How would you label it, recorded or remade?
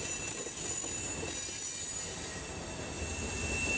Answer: recorded